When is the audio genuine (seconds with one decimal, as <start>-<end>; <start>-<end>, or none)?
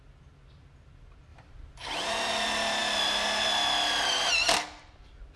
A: 0.0-5.4